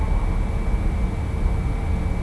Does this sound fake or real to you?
real